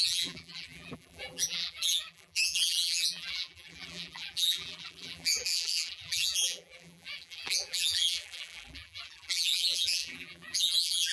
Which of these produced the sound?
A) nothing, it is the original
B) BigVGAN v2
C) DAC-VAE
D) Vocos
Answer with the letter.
B